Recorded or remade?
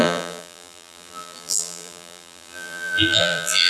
remade